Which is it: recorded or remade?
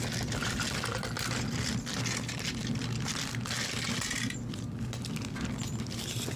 recorded